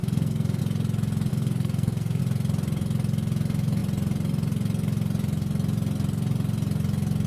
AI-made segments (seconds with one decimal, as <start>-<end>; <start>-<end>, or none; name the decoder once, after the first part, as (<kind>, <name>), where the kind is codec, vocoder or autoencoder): 0.0-0.6 (codec, SNAC); 1.3-2.2